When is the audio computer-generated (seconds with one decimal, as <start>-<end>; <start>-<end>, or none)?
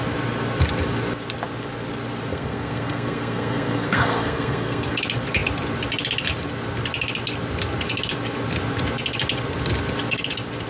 2.3-5.0